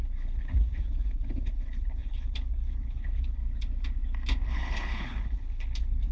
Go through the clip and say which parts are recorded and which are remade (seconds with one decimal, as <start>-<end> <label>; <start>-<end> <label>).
0.0-3.4 remade; 3.4-4.5 recorded; 4.5-6.1 remade